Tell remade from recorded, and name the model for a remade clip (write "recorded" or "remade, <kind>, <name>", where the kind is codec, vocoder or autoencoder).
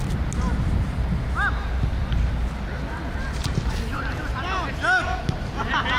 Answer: recorded